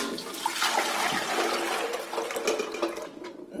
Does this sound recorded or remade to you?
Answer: recorded